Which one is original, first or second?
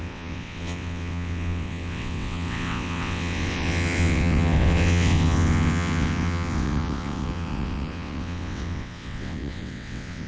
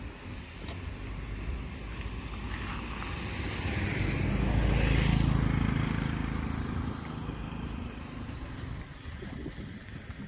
second